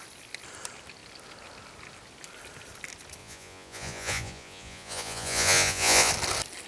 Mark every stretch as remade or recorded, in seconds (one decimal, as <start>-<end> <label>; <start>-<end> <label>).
0.0-3.2 recorded; 3.2-6.1 remade; 6.1-6.7 recorded